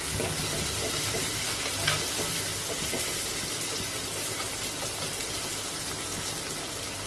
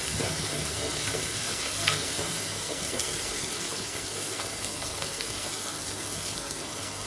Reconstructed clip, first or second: second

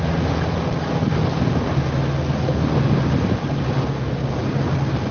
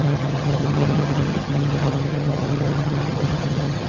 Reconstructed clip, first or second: second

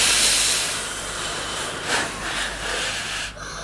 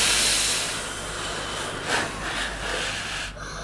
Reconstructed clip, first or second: first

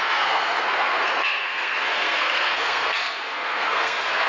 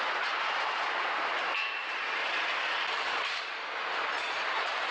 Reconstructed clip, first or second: first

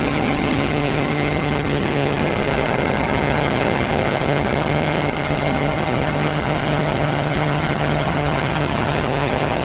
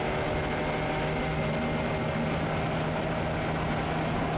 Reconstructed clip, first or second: first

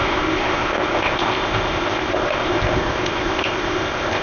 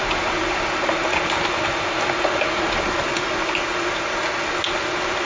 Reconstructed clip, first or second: first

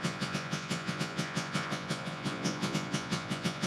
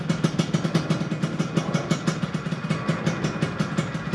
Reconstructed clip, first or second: first